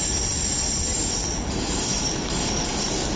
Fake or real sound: real